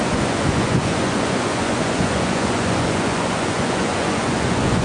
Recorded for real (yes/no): no